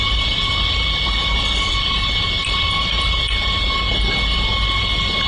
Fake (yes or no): no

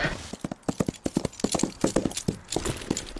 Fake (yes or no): no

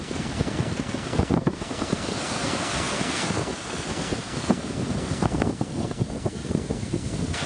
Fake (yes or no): yes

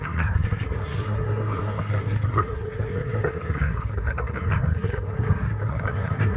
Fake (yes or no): yes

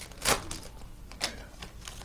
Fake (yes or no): no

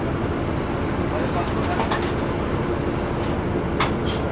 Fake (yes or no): no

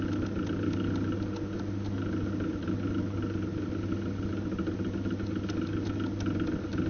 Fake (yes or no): no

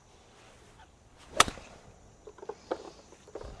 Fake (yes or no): no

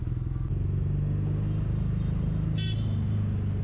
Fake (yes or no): no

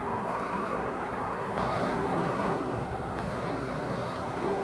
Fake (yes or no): yes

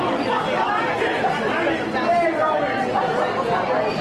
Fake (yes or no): no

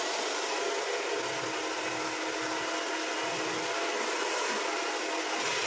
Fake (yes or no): no